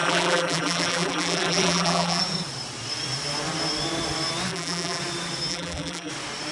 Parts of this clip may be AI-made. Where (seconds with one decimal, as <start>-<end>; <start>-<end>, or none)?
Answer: 0.0-2.2; 4.5-5.0; 5.5-6.1